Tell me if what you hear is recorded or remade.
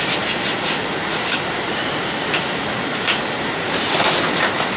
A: recorded